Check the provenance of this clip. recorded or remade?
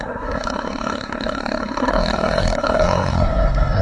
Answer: remade